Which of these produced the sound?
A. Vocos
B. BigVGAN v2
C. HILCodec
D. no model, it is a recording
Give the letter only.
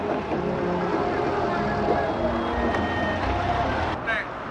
D